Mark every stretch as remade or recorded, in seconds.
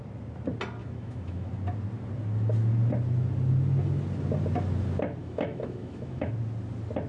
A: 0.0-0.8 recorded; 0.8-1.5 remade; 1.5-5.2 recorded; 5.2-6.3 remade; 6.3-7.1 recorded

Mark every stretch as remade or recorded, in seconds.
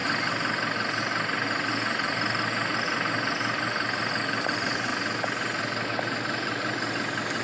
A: 0.0-4.4 recorded; 4.4-4.9 remade; 4.9-7.4 recorded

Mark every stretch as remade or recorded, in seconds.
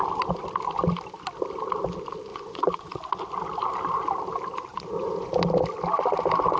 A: 0.0-2.3 recorded; 2.3-3.0 remade; 3.0-4.7 recorded; 4.7-5.3 remade; 5.3-6.6 recorded